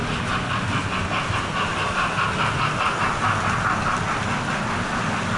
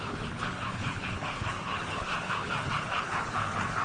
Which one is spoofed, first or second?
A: second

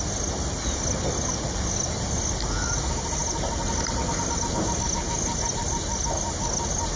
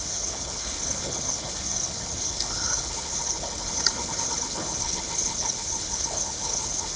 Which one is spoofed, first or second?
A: second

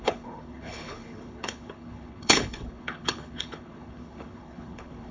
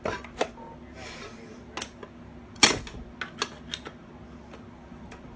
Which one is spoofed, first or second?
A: first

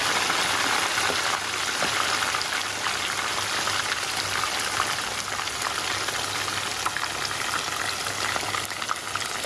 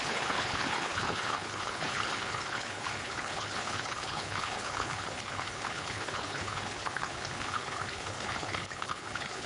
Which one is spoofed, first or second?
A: second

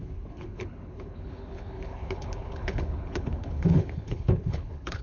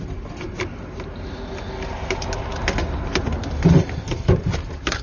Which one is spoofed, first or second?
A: first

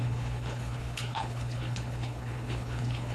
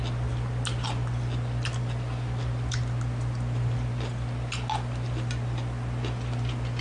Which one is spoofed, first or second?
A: first